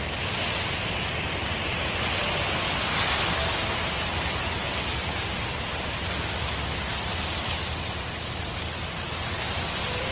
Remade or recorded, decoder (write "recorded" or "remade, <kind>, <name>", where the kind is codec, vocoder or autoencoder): recorded